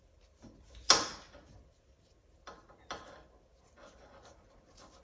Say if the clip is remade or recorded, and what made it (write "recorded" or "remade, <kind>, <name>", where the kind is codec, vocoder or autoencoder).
recorded